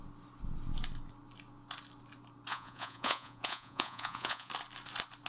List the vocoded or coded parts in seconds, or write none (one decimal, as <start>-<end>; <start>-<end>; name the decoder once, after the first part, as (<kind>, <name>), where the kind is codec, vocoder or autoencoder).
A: 2.5-4.5 (vocoder, Vocos)